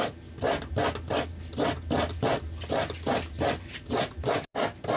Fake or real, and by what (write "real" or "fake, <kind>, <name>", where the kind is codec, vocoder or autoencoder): real